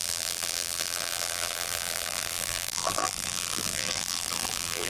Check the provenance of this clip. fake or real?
fake